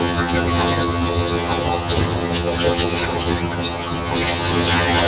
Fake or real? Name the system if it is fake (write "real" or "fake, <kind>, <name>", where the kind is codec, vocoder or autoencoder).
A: fake, vocoder, HiFi-GAN